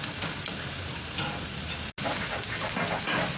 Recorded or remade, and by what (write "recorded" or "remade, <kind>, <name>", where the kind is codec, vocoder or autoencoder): recorded